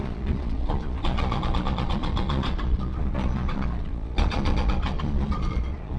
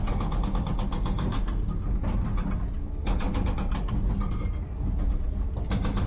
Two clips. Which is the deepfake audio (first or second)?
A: first